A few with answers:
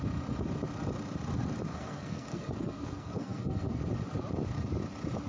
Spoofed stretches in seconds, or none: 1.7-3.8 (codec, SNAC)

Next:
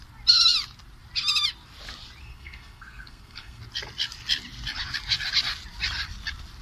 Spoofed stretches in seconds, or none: 2.2-3.6 (codec, SNAC)

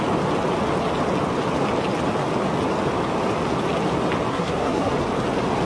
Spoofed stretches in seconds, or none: 4.3-4.9 (codec, SNAC)

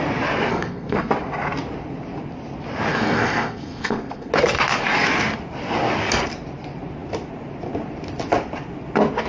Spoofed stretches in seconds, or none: 0.5-1.1 (codec, SNAC); 2.9-4.3

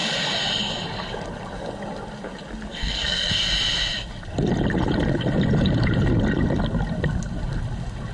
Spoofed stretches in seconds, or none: 2.7-3.3 (codec, SNAC)

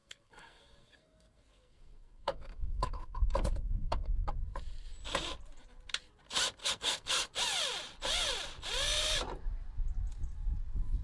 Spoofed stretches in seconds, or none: 0.0-4.3 (codec, SNAC); 6.6-7.3